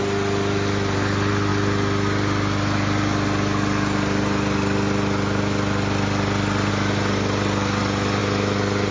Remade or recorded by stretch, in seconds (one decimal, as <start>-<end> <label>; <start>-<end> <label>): 0.0-8.9 recorded